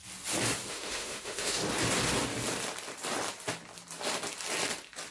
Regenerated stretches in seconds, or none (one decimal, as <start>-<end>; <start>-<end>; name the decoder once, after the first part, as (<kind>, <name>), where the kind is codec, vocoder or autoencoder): 0.7-1.6 (autoencoder, DAC-VAE)